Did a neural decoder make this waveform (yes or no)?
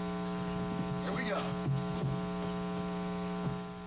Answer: no